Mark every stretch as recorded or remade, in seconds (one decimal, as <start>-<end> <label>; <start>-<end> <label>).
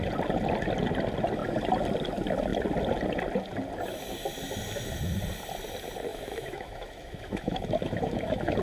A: 0.0-6.1 recorded; 6.1-8.6 remade